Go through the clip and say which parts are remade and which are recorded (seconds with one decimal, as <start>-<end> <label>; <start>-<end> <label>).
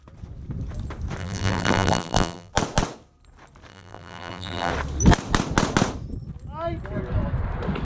0.0-1.2 recorded; 1.2-2.5 remade; 2.5-3.7 recorded; 3.7-4.7 remade; 4.7-7.8 recorded